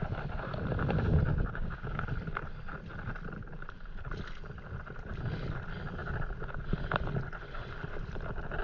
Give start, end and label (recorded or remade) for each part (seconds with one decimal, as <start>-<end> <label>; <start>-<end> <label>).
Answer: 0.0-1.3 recorded; 1.3-2.0 remade; 2.0-8.6 recorded